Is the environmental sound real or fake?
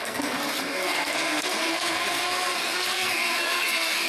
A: fake